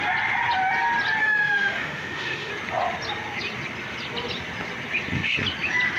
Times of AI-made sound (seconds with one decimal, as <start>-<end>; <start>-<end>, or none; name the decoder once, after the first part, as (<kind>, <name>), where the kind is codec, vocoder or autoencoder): 1.2-2.5 (autoencoder, DAC-VAE)